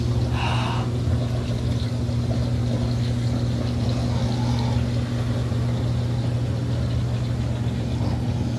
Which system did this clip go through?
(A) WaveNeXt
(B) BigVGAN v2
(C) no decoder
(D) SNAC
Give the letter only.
C